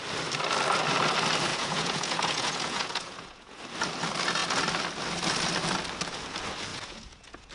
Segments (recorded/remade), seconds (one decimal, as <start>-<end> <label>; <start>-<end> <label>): 0.0-1.5 recorded; 1.5-3.6 remade; 3.6-6.7 recorded; 6.7-7.5 remade